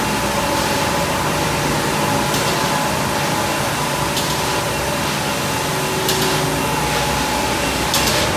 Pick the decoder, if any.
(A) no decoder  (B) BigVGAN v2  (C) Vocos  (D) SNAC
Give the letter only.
A